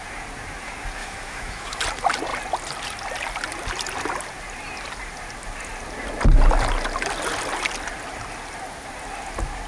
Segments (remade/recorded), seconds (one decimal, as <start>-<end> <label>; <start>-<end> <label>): 0.0-1.0 recorded; 1.0-1.8 remade; 1.8-9.7 recorded

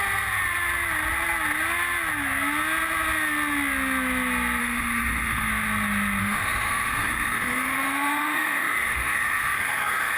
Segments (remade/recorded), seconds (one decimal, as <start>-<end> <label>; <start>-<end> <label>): 0.0-4.6 recorded; 4.6-5.5 remade; 5.5-6.2 recorded; 6.2-10.2 remade

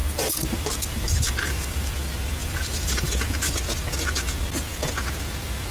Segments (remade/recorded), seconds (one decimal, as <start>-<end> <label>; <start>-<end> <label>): 0.0-1.9 remade; 1.9-2.4 recorded; 2.4-3.1 remade; 3.1-5.7 recorded